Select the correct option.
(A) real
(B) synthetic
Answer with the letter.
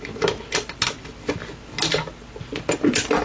A